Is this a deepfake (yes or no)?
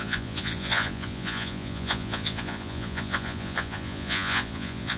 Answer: yes